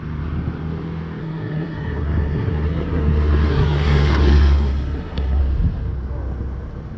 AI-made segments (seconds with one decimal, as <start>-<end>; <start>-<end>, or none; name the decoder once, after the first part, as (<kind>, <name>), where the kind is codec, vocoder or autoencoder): 1.2-5.4 (codec, SNAC)